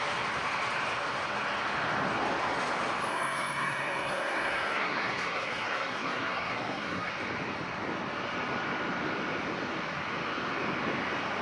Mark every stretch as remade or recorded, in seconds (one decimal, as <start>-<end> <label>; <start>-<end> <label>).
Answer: 0.0-3.1 recorded; 3.1-7.1 remade; 7.1-11.4 recorded